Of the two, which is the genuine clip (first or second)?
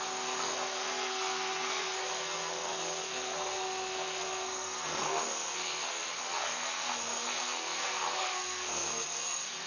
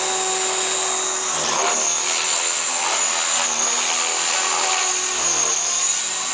second